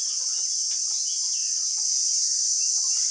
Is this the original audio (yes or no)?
yes